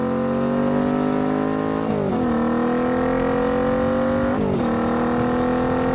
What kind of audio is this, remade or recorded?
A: recorded